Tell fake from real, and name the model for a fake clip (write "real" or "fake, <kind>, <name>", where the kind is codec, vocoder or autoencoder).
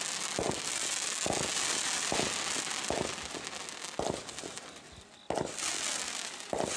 real